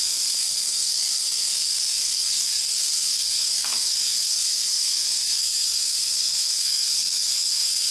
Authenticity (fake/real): fake